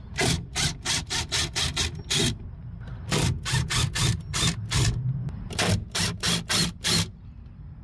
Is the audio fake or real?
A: real